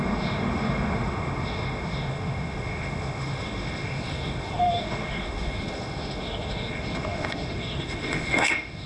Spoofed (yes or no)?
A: yes